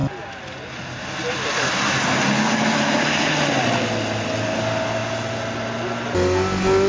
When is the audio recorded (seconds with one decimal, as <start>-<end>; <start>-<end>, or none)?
0.0-6.9